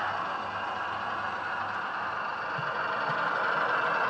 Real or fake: real